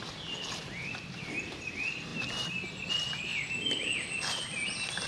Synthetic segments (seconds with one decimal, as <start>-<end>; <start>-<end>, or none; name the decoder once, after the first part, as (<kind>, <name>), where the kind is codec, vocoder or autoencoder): none